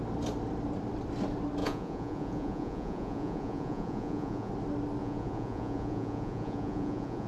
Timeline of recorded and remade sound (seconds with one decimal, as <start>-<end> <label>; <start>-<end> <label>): 0.0-1.6 recorded; 1.6-4.5 remade; 4.5-5.0 recorded; 5.0-7.3 remade